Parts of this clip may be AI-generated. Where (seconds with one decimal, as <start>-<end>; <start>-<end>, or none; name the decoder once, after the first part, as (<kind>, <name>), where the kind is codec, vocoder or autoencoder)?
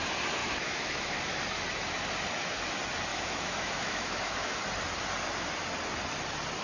0.4-1.2 (autoencoder, DAC-VAE); 3.1-4.6